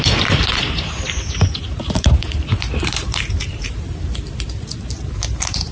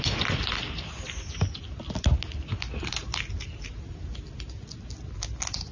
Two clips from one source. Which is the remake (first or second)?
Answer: first